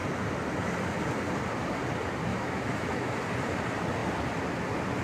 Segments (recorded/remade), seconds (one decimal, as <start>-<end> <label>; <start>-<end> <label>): 0.0-2.3 recorded; 2.3-3.2 remade; 3.2-5.0 recorded